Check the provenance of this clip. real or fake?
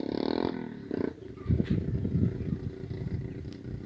real